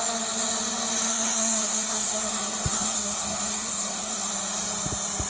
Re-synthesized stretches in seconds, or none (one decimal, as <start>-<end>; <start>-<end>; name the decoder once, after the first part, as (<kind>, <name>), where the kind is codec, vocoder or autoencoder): 1.1-4.3 (codec, SNAC)